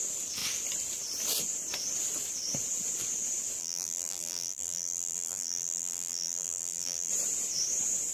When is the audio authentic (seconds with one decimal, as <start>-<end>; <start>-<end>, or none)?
0.0-3.6; 7.1-8.1